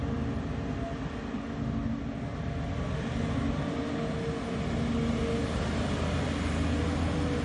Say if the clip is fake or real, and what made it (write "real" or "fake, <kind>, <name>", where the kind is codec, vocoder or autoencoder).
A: real